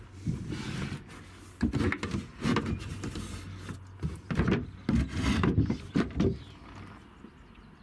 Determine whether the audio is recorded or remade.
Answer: recorded